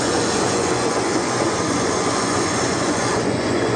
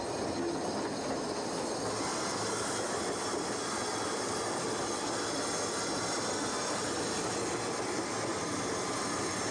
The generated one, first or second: first